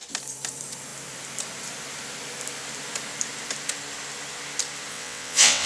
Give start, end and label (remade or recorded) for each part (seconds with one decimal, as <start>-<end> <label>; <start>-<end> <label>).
0.0-4.9 recorded; 4.9-5.7 remade